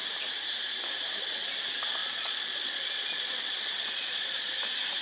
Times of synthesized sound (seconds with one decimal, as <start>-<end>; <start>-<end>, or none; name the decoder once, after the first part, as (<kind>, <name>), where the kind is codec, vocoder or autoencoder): 2.0-4.5 (vocoder, Vocos)